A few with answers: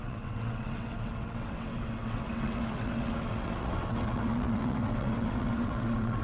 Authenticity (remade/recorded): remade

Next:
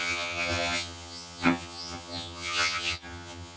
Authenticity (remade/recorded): remade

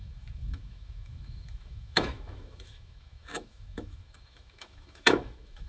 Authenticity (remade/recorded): remade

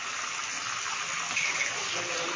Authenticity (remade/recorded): recorded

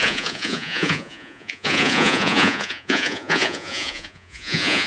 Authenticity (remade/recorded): remade